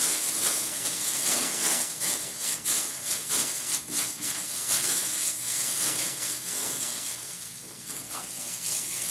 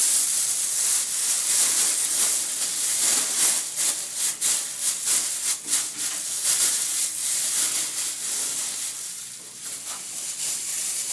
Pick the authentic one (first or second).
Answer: second